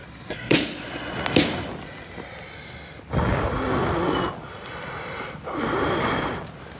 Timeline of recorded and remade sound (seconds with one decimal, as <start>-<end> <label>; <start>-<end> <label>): 0.0-1.2 remade; 1.2-6.8 recorded